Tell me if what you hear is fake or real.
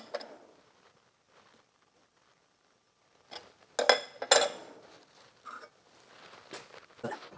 real